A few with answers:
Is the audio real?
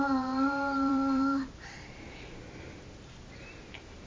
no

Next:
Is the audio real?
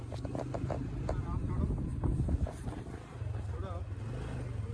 yes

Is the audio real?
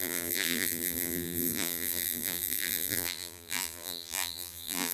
no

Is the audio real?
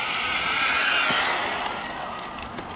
yes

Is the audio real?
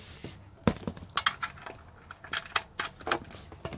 yes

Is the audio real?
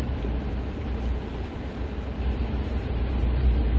no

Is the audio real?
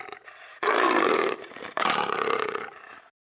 no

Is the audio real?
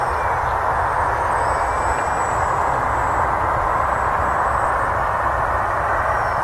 yes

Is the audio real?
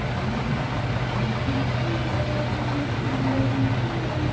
yes